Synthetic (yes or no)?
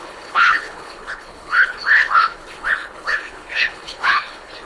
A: yes